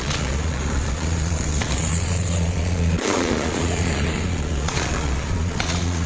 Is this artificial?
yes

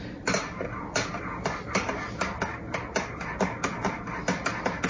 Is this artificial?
no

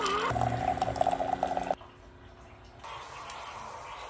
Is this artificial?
no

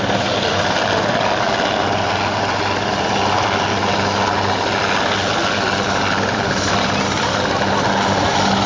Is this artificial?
no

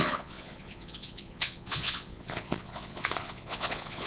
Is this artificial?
yes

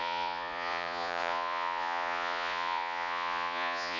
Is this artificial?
yes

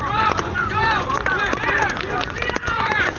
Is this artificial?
yes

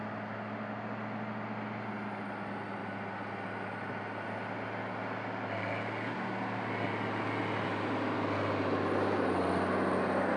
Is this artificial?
no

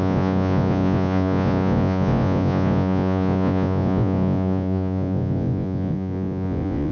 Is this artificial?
yes